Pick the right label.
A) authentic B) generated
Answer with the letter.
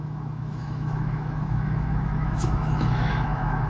B